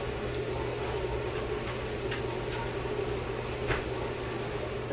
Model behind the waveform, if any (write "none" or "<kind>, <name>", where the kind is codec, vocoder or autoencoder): none